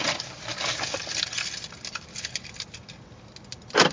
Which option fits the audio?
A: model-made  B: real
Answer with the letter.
B